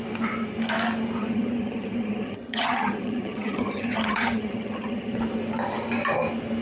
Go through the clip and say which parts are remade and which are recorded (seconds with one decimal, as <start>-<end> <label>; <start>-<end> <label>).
0.0-1.2 recorded; 1.2-5.2 remade; 5.2-6.6 recorded